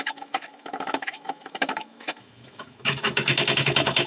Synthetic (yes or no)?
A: yes